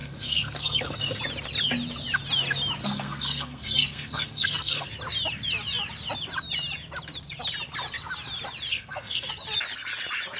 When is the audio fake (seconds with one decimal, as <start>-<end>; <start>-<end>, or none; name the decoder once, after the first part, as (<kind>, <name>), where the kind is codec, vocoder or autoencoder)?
0.0-1.2 (codec, SNAC); 2.8-4.9; 8.7-9.3